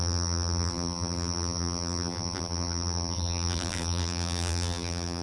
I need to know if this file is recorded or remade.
remade